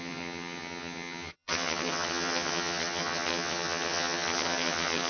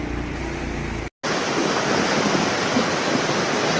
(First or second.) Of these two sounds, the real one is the second